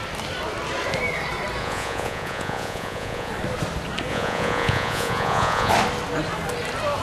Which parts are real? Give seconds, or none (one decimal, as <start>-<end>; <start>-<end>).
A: 0.0-1.6; 3.3-4.1; 5.7-7.0